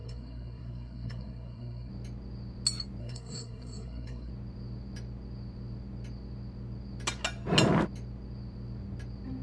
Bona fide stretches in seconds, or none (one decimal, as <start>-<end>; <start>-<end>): 1.9-3.0; 4.3-9.4